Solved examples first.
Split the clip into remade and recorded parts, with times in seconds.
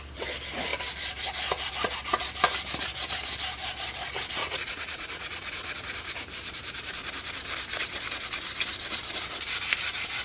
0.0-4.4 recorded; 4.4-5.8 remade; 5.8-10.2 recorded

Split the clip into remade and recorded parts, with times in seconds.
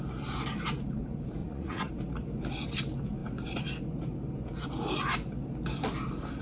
0.0-1.4 recorded; 1.4-1.9 remade; 1.9-6.4 recorded